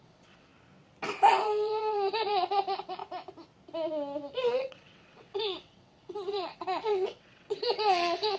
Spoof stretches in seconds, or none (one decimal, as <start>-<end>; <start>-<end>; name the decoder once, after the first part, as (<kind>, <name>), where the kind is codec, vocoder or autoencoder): 0.0-0.5 (vocoder, WaveNeXt); 1.3-3.0; 4.4-8.4